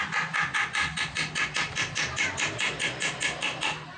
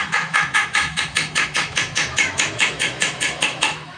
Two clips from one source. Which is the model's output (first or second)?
second